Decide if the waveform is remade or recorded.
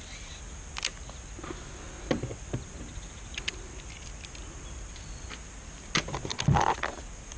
recorded